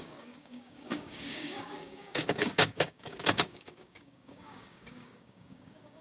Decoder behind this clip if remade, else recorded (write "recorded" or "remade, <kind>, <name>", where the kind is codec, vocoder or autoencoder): remade, codec, DAC